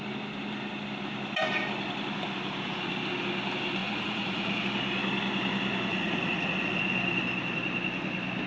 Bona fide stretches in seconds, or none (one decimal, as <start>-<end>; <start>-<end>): 0.0-3.8; 4.6-5.9; 6.8-8.5